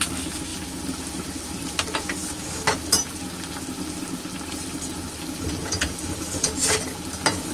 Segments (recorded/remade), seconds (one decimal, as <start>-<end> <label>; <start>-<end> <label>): 0.0-5.6 recorded; 5.6-6.4 remade; 6.4-7.5 recorded